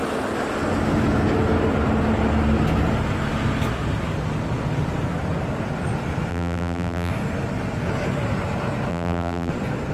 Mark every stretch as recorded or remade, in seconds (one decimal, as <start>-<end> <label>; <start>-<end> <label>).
0.0-6.3 recorded; 6.3-7.1 remade; 7.1-8.9 recorded; 8.9-9.5 remade; 9.5-9.9 recorded